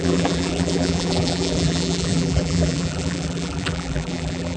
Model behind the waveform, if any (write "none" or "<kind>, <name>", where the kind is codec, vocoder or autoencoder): vocoder, BigVGAN v2